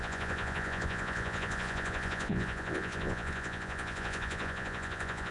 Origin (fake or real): fake